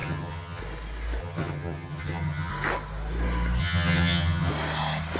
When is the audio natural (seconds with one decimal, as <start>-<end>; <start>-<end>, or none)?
0.6-1.2; 2.5-3.6; 4.5-5.2